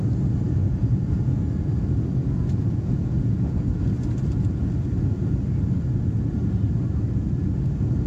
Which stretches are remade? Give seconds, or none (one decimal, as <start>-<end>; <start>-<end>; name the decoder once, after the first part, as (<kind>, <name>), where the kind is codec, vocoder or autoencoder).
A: 0.6-1.4 (vocoder, Vocos); 2.2-3.7